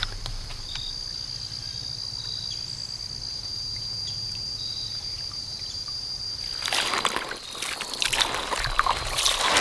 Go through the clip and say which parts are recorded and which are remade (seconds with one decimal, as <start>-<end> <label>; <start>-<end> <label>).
0.0-3.3 recorded; 3.3-6.4 remade; 6.4-9.6 recorded